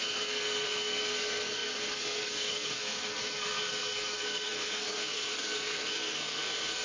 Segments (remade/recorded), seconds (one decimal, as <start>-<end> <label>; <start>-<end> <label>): 0.0-6.8 remade

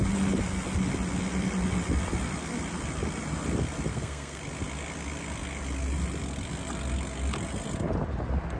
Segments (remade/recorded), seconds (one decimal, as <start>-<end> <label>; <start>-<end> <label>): 0.0-3.9 recorded; 3.9-4.4 remade; 4.4-8.6 recorded